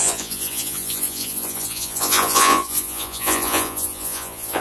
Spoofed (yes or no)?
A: yes